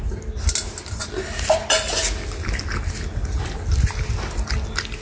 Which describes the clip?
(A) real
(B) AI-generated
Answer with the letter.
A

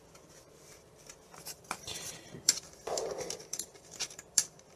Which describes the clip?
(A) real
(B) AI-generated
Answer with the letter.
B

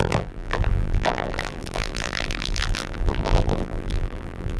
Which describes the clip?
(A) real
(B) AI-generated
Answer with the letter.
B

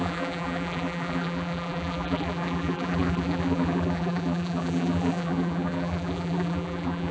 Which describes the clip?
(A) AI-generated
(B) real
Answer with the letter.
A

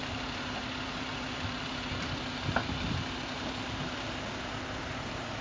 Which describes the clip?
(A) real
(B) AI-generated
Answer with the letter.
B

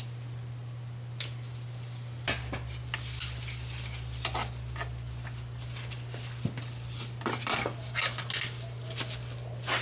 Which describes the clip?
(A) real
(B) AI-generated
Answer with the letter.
A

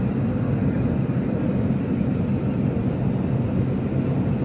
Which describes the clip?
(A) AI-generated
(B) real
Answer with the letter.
B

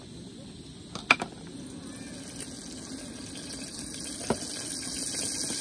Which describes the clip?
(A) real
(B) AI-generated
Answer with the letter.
A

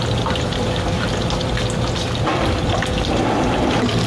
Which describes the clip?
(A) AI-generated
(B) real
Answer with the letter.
A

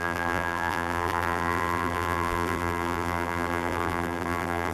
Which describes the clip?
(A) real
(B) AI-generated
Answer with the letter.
B